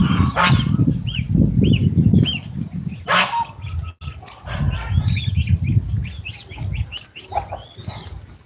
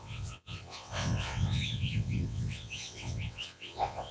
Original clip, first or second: first